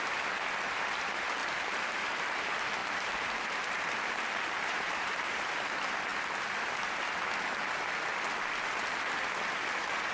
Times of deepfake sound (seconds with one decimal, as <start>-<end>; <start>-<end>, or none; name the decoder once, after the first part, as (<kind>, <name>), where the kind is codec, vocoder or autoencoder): 1.4-2.1 (vocoder, BigVGAN v2); 2.8-5.5